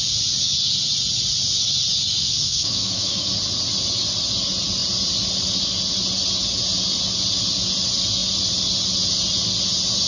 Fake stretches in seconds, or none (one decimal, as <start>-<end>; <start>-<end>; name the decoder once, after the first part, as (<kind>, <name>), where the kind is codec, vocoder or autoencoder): 2.2-3.3 (autoencoder, DAC-VAE)